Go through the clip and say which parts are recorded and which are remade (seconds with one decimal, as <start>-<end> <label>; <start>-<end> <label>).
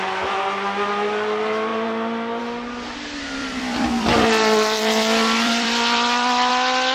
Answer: 0.0-3.4 recorded; 3.4-6.5 remade; 6.5-6.9 recorded